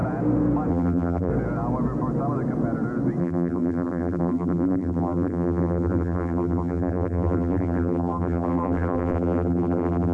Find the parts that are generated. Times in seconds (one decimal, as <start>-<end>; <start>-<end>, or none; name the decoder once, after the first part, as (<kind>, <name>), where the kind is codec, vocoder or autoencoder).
0.7-1.3 (vocoder, BigVGAN v2); 3.2-10.1